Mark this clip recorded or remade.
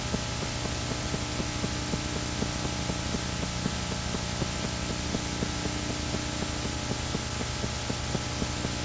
recorded